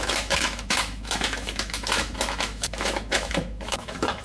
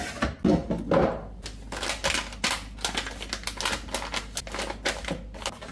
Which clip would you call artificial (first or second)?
first